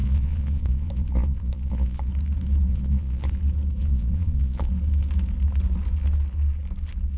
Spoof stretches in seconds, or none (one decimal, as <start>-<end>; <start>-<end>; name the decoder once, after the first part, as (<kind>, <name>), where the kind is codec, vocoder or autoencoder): 0.0-2.1 (vocoder, Vocos); 2.7-3.3; 3.8-4.7